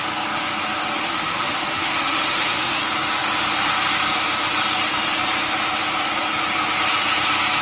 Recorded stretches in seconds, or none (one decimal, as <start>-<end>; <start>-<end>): 0.0-1.0; 2.8-7.6